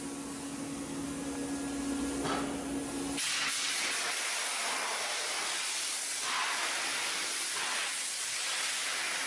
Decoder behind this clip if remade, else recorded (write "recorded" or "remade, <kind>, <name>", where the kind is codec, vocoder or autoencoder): recorded